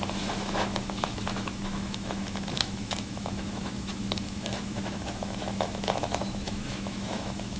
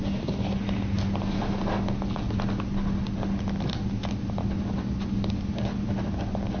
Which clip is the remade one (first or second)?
first